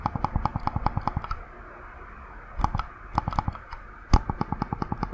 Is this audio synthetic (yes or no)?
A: no